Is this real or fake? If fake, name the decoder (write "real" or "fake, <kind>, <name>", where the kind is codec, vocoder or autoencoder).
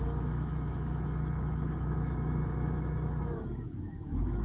fake, autoencoder, DAC-VAE